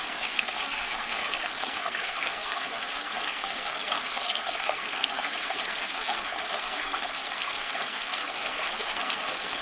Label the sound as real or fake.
fake